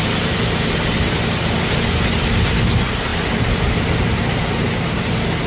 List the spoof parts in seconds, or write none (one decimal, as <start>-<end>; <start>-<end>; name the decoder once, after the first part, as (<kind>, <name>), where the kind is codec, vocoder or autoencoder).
none